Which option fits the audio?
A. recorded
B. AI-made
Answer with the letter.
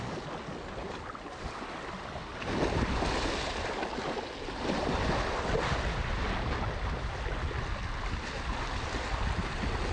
A